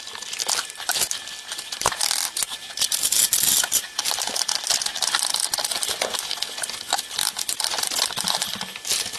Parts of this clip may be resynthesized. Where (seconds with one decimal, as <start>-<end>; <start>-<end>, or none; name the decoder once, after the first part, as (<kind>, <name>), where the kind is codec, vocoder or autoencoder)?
0.0-0.4 (vocoder, BigVGAN v2); 3.8-4.6; 6.8-9.2